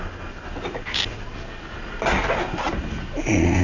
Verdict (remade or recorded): recorded